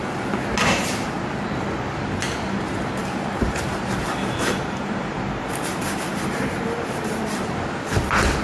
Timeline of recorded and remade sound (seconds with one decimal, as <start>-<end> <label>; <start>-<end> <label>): 0.0-0.7 recorded; 0.7-1.2 remade; 1.2-3.0 recorded; 3.0-7.5 remade; 7.5-8.4 recorded